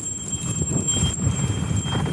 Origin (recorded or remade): recorded